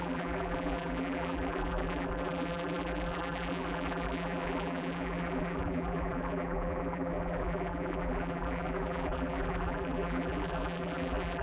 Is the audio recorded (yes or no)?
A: no